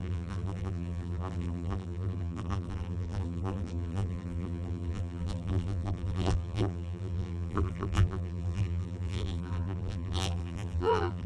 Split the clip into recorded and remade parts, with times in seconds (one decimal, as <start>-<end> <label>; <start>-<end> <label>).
0.0-11.3 remade